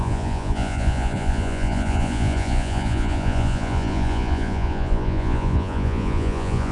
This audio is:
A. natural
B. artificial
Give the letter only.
B